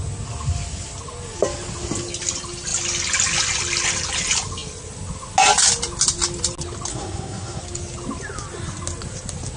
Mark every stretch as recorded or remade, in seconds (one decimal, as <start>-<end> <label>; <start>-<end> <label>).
0.0-6.9 recorded; 6.9-7.6 remade; 7.6-9.6 recorded